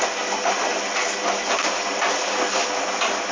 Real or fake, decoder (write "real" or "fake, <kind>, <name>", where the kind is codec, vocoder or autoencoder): real